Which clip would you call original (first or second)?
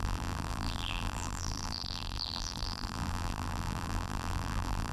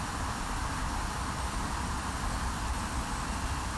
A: second